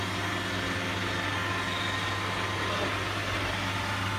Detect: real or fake real